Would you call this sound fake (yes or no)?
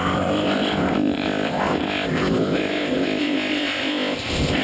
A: yes